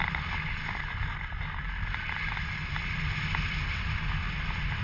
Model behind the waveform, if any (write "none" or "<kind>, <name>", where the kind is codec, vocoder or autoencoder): none